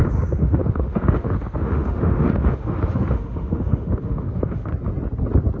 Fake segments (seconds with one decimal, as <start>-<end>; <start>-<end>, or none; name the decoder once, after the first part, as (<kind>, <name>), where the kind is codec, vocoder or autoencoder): 0.0-4.7 (autoencoder, DAC-VAE)